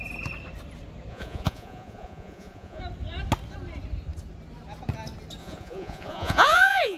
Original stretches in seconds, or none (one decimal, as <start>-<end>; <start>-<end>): 0.0-1.1; 2.8-5.4

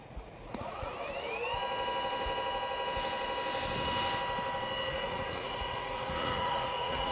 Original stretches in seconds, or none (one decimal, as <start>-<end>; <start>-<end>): 0.9-4.9